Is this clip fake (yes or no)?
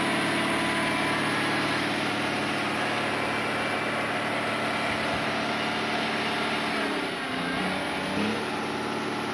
no